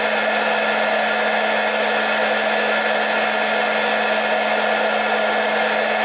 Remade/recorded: recorded